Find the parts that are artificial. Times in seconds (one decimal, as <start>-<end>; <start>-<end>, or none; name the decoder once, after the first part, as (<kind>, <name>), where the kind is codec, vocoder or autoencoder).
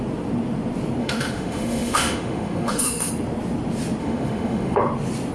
1.0-3.1 (autoencoder, DAC-VAE); 4.0-4.8